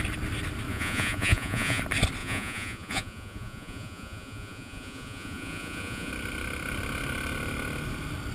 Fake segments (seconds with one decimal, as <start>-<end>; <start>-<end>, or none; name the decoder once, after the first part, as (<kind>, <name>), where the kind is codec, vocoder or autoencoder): 0.7-1.8 (vocoder, Vocos); 2.2-6.1